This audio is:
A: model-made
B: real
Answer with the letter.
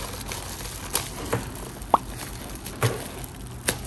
B